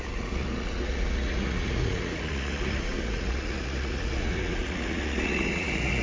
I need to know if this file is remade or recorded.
remade